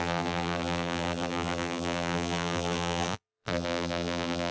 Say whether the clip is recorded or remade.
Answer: remade